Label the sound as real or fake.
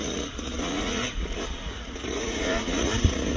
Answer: fake